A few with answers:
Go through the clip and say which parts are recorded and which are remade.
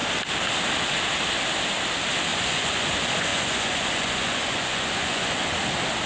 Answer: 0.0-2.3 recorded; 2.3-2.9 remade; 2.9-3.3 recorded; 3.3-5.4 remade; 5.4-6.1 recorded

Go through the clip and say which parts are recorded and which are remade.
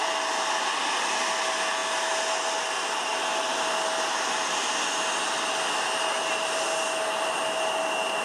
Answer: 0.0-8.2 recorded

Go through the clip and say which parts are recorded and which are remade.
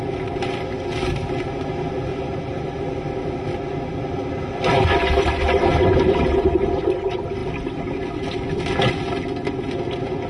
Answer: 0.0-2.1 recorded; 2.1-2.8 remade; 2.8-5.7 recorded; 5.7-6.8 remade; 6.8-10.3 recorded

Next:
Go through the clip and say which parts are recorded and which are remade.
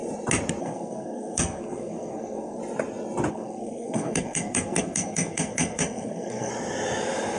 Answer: 0.0-0.6 recorded; 0.6-2.6 remade; 2.6-3.3 recorded; 3.3-6.5 remade; 6.5-7.4 recorded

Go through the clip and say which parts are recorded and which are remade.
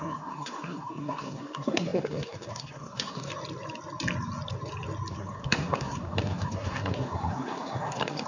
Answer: 0.0-3.3 remade; 3.3-5.1 recorded; 5.1-8.3 remade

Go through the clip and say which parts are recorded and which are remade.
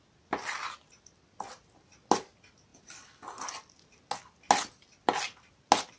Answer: 0.0-6.0 recorded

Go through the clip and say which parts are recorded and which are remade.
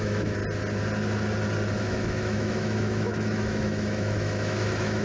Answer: 0.0-0.4 remade; 0.4-1.8 recorded; 1.8-5.0 remade